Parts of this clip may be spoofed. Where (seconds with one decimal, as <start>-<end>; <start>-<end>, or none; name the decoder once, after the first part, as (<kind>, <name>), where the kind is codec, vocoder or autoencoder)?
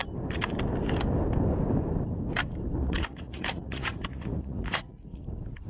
2.8-5.2 (vocoder, Vocos)